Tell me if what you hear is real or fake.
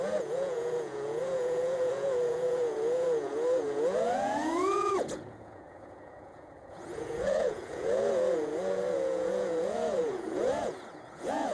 fake